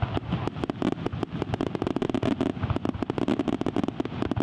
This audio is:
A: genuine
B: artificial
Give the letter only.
A